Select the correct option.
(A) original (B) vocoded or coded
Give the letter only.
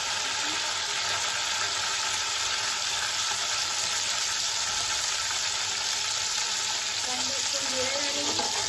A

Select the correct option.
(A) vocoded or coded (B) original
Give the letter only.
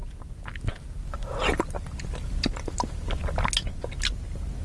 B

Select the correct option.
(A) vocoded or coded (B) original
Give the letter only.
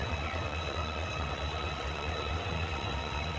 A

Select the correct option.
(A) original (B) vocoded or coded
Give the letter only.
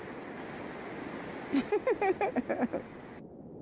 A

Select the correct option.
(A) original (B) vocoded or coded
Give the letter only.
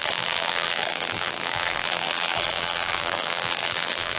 B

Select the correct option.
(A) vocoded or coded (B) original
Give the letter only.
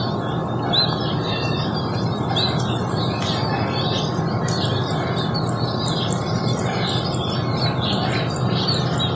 B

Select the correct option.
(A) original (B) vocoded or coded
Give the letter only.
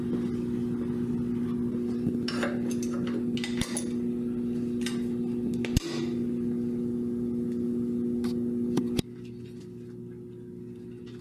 A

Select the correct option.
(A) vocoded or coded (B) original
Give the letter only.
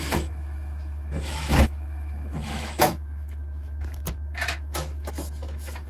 A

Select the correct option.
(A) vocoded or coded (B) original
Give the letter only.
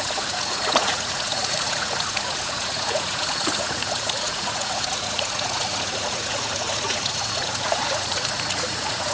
A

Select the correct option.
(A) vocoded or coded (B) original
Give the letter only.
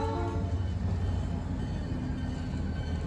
B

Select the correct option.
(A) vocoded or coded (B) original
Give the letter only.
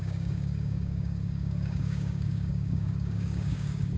A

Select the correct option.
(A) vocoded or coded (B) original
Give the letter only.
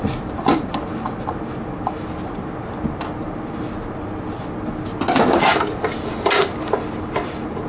B